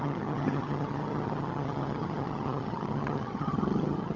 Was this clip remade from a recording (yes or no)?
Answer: yes